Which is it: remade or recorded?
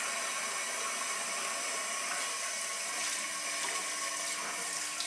recorded